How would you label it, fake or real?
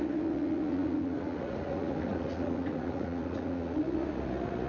fake